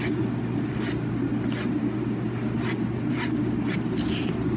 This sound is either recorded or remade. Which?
recorded